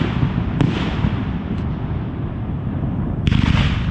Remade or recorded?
recorded